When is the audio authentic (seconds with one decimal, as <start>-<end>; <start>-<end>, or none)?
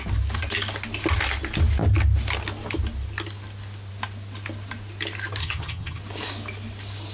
0.0-5.4; 6.0-7.1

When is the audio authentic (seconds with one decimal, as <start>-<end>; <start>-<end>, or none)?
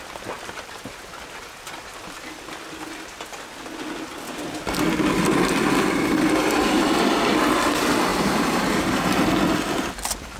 0.0-8.1; 9.2-10.4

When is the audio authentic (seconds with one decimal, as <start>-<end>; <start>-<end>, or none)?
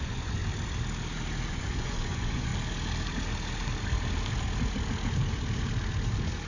0.4-1.5; 2.5-6.5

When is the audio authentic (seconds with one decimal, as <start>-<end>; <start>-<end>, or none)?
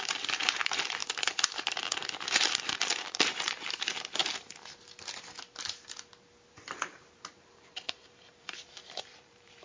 4.2-6.5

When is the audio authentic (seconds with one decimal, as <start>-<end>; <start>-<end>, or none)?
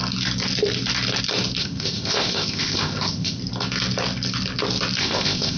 0.0-1.6; 3.4-5.0